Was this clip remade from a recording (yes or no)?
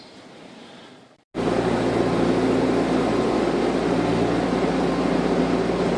no